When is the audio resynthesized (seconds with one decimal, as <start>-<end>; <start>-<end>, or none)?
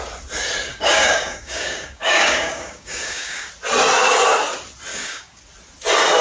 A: 0.7-3.5; 4.9-5.4